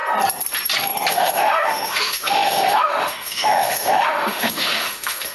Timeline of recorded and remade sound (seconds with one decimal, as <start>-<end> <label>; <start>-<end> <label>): 0.0-1.1 recorded; 1.1-5.3 remade